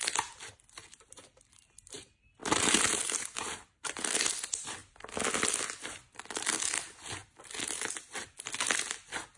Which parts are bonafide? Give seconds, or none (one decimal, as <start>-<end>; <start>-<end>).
0.0-2.4; 4.0-9.4